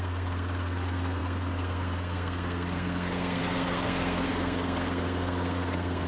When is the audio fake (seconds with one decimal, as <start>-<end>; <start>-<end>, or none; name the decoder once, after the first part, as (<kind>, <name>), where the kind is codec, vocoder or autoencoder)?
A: 0.0-6.1 (codec, SNAC)